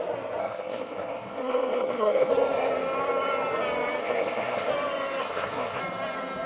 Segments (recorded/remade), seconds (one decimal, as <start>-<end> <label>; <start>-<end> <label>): 0.0-0.4 recorded; 0.4-2.3 remade; 2.3-4.0 recorded; 4.0-4.7 remade; 4.7-5.2 recorded; 5.2-5.8 remade; 5.8-6.5 recorded